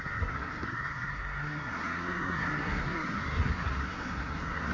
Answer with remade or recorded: remade